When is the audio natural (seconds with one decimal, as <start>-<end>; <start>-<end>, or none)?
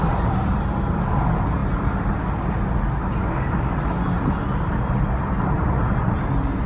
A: 0.0-3.2; 3.7-6.7